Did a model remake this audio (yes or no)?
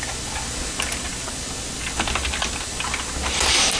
no